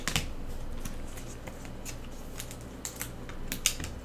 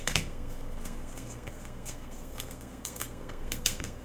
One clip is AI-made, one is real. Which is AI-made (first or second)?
second